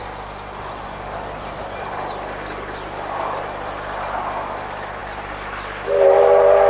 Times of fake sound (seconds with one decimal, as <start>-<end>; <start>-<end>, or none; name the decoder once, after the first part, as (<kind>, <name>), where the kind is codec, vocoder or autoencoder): none